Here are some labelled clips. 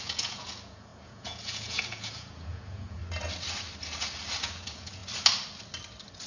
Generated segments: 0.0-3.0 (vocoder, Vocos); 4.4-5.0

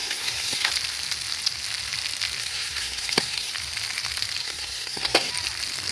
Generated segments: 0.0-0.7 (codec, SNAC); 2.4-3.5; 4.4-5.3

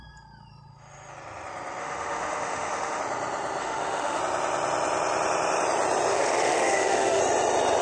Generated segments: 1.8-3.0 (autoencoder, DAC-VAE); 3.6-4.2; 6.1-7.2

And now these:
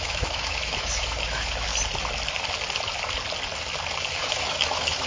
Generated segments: 0.0-1.7 (autoencoder, DAC-VAE); 4.1-5.1